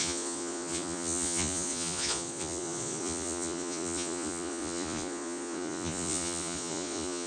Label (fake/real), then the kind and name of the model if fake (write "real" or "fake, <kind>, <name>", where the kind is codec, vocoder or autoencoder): fake, vocoder, Vocos